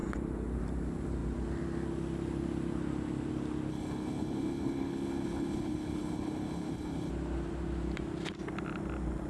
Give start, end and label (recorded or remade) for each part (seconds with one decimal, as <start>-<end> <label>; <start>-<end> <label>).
0.0-3.7 recorded; 3.7-7.1 remade; 7.1-9.3 recorded